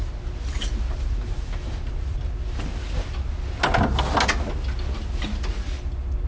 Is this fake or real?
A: real